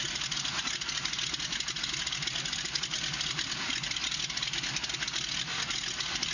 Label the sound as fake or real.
real